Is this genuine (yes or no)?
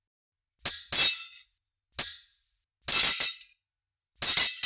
yes